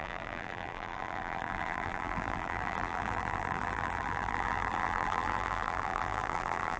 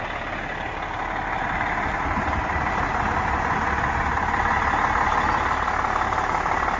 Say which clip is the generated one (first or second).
first